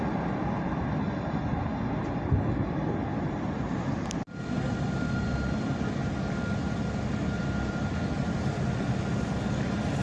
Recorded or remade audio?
recorded